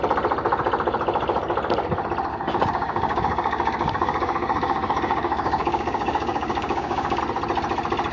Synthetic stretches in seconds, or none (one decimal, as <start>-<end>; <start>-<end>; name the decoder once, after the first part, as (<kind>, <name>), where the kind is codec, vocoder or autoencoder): 2.3-7.2 (codec, DAC)